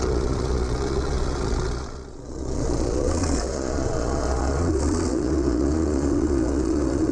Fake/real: fake